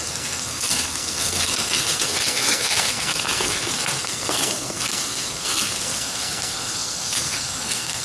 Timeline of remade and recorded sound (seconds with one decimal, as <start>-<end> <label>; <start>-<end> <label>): 0.0-8.0 remade